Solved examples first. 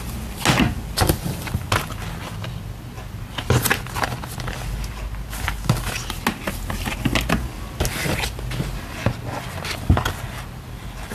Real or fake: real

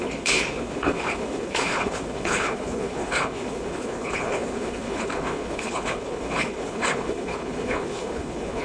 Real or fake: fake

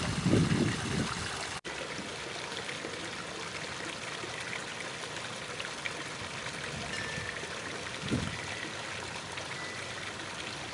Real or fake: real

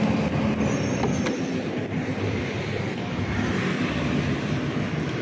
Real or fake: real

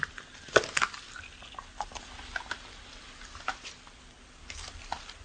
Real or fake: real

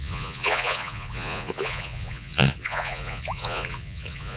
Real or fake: fake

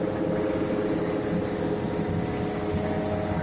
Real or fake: real